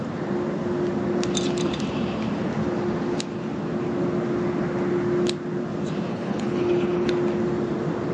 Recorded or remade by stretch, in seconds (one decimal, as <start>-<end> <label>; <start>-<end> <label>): 0.0-6.1 recorded; 6.1-7.1 remade; 7.1-8.1 recorded